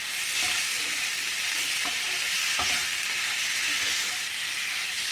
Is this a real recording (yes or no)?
yes